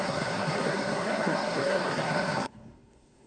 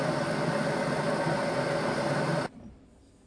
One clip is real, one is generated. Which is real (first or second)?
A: second